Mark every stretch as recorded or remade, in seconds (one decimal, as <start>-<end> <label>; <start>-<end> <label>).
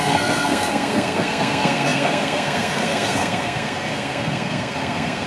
0.0-5.3 remade